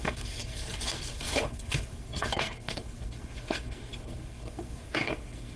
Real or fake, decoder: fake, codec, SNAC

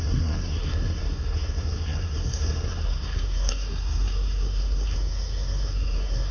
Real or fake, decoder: fake, codec, SNAC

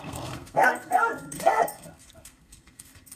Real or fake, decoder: fake, codec, SNAC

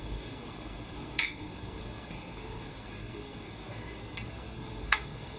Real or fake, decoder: fake, codec, SNAC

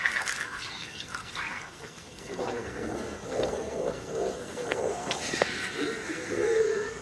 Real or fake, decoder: fake, codec, SNAC